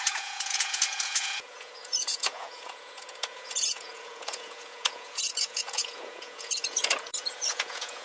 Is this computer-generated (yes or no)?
yes